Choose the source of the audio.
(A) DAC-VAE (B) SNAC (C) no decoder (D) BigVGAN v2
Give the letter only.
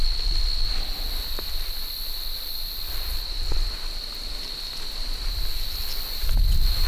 C